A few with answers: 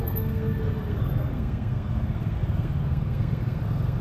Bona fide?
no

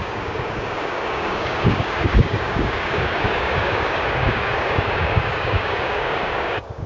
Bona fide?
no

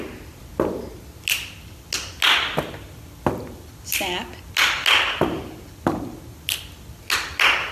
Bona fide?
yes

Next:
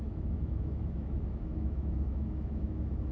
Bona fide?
no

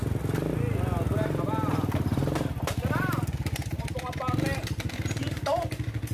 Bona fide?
yes